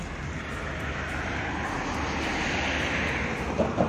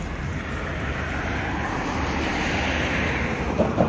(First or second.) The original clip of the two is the first